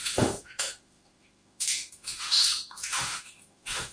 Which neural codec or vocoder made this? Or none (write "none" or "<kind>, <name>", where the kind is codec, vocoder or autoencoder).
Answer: autoencoder, DAC-VAE